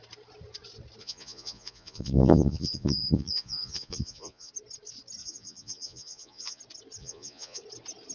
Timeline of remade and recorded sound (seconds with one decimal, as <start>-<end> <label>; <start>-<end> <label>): 0.0-1.0 recorded; 1.0-4.5 remade; 4.5-5.2 recorded; 5.2-6.6 remade; 6.6-7.0 recorded; 7.0-7.6 remade; 7.6-8.1 recorded